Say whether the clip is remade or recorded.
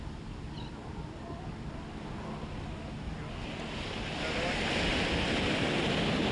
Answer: recorded